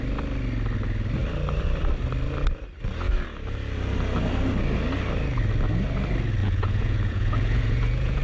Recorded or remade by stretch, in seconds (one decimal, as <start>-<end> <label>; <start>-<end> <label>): 0.0-6.4 recorded; 6.4-8.2 remade